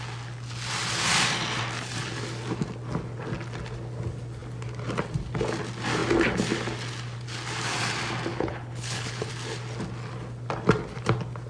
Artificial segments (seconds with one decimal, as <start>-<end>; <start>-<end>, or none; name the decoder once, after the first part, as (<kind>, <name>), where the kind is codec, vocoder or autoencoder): 8.3-9.3 (codec, HILCodec)